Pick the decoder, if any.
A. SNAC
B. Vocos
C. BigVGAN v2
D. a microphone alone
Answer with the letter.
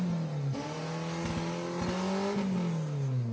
D